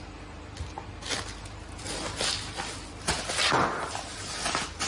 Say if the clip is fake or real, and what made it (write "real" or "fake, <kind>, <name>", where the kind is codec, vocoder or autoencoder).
real